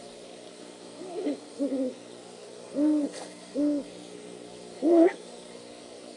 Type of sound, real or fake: fake